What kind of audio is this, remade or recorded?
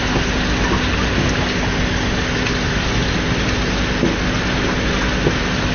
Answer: recorded